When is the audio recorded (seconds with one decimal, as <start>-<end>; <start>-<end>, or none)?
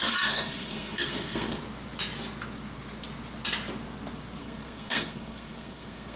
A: 1.6-4.4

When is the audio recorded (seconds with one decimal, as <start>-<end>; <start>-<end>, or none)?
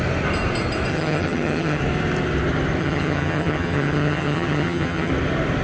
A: 0.0-0.9; 1.8-2.8; 5.1-5.6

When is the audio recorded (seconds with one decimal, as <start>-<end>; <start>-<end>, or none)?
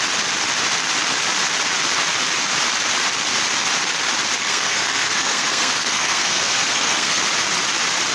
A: 0.0-4.4; 7.2-8.1